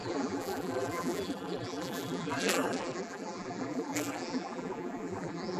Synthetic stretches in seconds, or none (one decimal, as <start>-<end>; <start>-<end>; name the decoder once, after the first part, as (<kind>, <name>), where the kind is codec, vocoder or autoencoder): 0.0-5.6 (vocoder, BigVGAN v2)